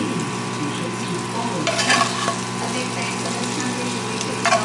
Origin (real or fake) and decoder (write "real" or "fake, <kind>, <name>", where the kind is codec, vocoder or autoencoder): real